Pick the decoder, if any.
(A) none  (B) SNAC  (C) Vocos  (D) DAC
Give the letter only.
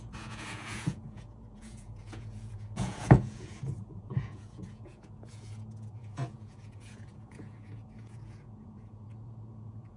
C